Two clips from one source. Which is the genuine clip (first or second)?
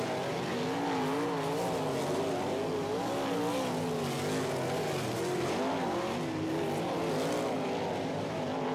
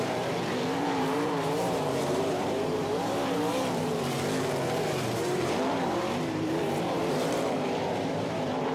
first